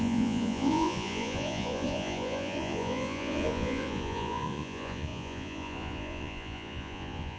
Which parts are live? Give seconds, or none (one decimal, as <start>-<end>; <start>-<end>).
none